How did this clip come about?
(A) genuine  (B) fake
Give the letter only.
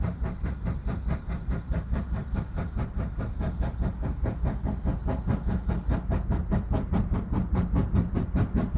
A